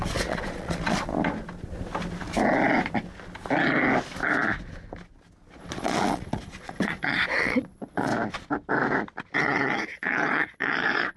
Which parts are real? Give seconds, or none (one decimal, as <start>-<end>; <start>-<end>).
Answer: 1.1-5.6; 8.1-9.4